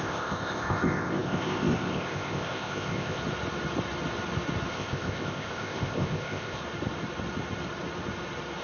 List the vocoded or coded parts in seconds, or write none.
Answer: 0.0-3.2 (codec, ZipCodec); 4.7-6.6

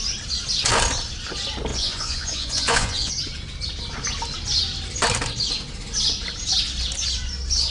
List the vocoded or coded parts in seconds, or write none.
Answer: 1.7-3.1 (vocoder, Vocos)

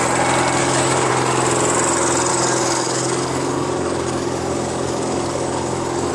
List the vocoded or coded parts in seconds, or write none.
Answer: 0.6-1.1 (codec, DAC); 2.3-6.1

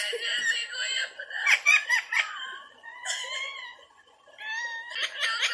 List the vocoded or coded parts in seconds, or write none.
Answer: 0.9-4.2 (vocoder, Vocos)

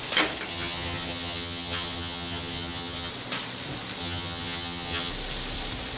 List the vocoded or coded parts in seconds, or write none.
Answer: 0.5-3.1 (vocoder, HiFi-GAN); 4.0-5.1

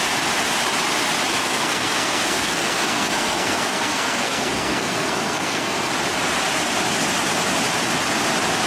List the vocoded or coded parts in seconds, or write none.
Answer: 1.3-5.9 (codec, SNAC)